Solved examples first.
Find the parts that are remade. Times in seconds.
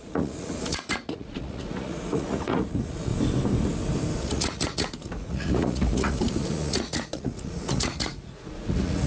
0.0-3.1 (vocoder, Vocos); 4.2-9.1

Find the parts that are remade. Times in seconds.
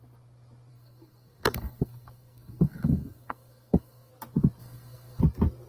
0.7-4.1 (codec, SNAC); 4.6-5.2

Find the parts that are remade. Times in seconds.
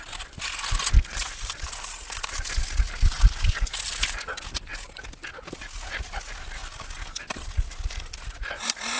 none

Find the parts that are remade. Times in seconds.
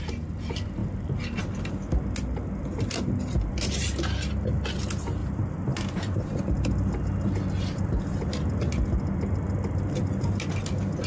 5.2-6.4 (vocoder, BigVGAN v2)